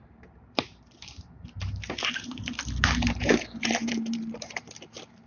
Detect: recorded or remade remade